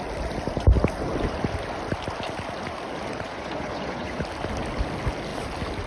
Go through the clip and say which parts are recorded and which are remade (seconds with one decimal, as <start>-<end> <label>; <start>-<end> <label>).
0.0-3.1 recorded; 3.1-4.2 remade; 4.2-5.9 recorded